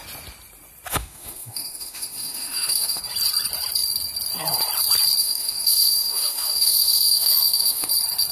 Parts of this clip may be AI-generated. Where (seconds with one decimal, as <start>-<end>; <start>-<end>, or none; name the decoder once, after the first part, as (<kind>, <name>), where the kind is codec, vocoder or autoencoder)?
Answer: 0.9-3.0 (autoencoder, DAC-VAE); 5.2-7.9